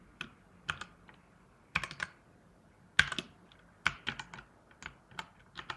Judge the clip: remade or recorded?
recorded